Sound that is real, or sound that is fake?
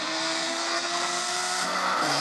fake